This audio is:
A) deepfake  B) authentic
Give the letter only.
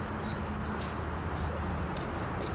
B